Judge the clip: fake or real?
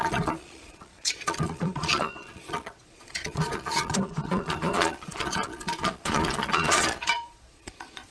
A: fake